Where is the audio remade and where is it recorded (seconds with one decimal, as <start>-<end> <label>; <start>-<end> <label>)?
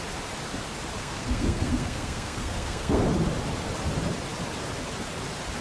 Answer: 0.0-1.0 recorded; 1.0-3.0 remade; 3.0-5.6 recorded